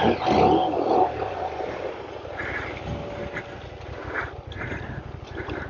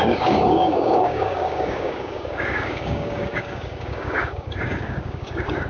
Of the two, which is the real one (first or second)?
first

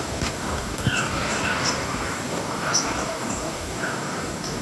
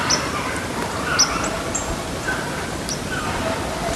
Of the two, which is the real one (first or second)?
second